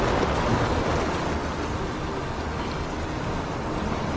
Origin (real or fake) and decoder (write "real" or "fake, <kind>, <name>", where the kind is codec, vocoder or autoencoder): real